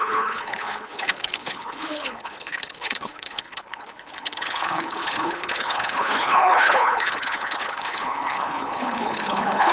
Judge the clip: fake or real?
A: fake